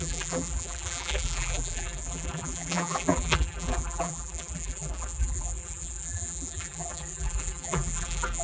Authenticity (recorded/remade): remade